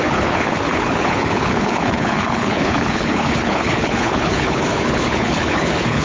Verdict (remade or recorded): remade